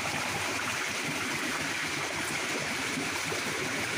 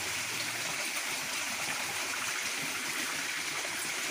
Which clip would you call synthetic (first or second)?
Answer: first